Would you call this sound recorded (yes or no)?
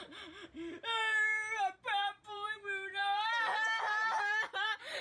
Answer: no